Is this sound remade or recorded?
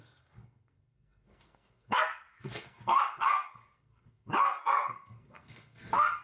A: remade